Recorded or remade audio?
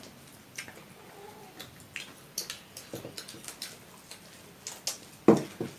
recorded